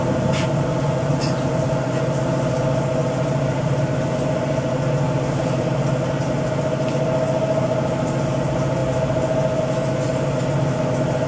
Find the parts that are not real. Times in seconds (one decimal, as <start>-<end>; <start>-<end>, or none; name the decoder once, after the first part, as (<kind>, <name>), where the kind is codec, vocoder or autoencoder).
3.0-3.8 (vocoder, BigVGAN v2)